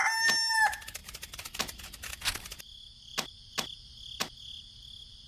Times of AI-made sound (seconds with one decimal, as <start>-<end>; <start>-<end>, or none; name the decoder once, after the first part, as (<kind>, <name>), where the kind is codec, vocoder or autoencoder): none